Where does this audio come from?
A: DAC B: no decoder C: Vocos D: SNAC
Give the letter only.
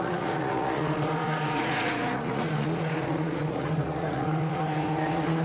C